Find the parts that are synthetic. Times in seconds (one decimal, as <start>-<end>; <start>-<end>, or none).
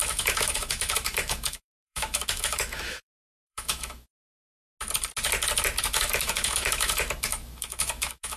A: 0.0-4.4; 5.8-8.4